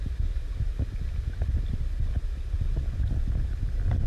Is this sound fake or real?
real